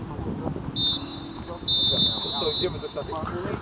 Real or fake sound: real